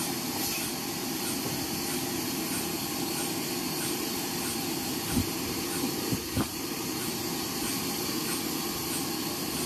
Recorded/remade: remade